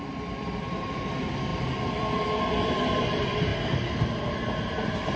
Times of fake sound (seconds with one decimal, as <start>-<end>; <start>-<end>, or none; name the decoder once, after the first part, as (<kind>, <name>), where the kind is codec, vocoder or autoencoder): 0.0-3.5 (vocoder, BigVGAN v2); 4.3-5.2

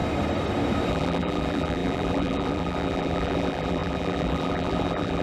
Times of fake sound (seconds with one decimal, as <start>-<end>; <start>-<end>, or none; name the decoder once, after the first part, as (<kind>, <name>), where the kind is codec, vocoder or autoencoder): 0.9-5.2 (vocoder, BigVGAN v2)

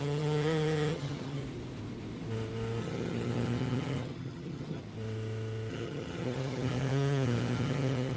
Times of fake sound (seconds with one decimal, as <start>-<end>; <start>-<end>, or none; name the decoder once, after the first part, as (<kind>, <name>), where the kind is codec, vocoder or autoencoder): 0.0-1.4 (vocoder, HiFi-GAN); 2.8-4.8; 5.7-8.2

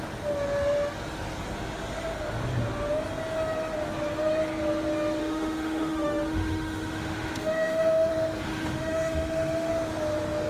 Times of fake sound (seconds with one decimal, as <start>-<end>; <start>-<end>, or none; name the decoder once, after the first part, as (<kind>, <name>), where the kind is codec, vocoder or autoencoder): 5.2-8.1 (autoencoder, DAC-VAE); 8.5-9.7

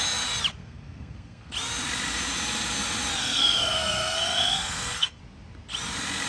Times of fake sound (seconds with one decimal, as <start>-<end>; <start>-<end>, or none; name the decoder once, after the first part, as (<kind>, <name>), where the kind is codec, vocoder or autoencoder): 0.6-1.5 (codec, SNAC); 3.2-5.2

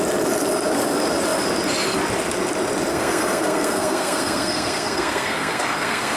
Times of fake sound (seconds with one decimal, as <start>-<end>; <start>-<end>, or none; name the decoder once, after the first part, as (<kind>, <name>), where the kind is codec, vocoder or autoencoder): 2.9-6.2 (codec, SNAC)

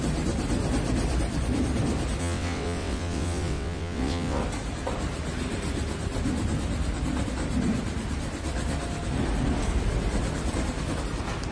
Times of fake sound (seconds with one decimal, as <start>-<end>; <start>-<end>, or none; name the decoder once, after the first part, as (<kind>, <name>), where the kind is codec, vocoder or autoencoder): 2.2-4.4 (vocoder, WaveNeXt)